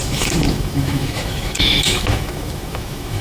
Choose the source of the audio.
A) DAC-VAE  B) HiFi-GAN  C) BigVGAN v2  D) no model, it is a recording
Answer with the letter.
A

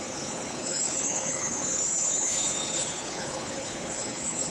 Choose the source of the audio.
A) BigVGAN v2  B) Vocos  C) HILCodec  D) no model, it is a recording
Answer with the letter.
C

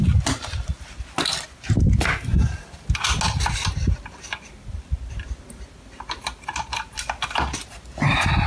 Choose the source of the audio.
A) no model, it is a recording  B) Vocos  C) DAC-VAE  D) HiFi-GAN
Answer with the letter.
A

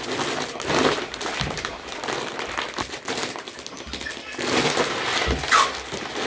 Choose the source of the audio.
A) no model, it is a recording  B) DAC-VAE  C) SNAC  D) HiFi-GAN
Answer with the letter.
A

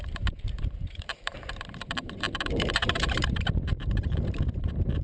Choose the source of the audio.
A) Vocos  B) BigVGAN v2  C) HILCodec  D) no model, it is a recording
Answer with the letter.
B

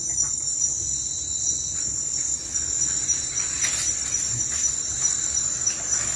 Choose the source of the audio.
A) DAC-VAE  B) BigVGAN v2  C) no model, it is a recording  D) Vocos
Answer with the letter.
C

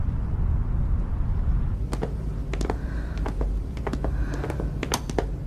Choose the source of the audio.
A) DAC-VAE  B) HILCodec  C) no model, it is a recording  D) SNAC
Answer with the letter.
C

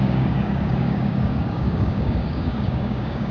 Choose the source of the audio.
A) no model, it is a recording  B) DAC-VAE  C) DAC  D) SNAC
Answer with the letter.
C